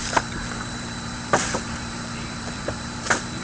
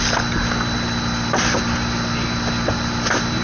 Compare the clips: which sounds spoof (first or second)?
first